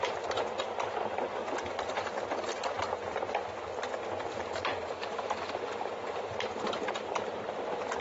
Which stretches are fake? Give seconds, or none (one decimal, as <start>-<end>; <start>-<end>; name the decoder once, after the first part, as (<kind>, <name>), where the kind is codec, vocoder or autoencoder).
0.0-1.4 (vocoder, BigVGAN v2); 4.0-8.0